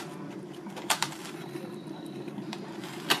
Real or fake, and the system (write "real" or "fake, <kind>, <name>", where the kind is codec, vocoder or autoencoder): fake, vocoder, BigVGAN v2